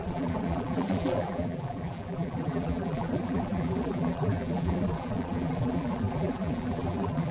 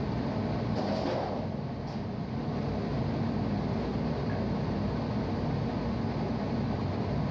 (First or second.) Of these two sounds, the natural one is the second